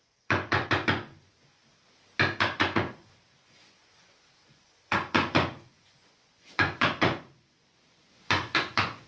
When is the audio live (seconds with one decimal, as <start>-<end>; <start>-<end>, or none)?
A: 1.6-2.4

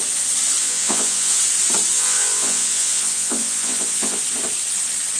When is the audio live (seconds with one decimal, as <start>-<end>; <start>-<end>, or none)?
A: 0.0-0.6; 1.4-1.9; 4.2-5.2

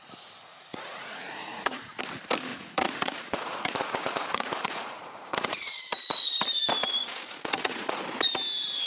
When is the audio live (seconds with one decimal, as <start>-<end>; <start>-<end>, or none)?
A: 0.0-0.5; 2.0-2.5; 6.1-7.0; 8.0-8.9